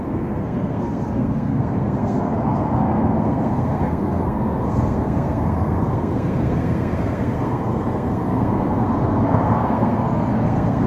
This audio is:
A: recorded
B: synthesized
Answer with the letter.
B